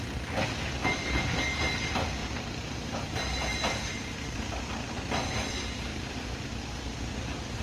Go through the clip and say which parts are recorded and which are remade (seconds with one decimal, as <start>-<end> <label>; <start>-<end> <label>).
0.0-2.2 recorded; 2.2-4.7 remade; 4.7-5.9 recorded; 5.9-6.5 remade; 6.5-7.6 recorded